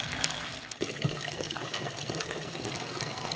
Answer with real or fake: fake